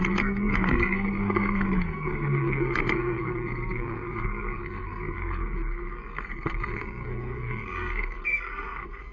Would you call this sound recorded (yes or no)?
no